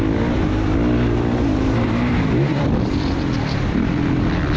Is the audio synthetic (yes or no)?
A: yes